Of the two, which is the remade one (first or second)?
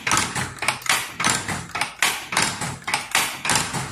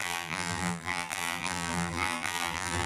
second